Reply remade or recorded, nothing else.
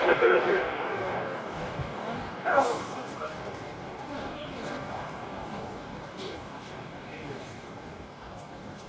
remade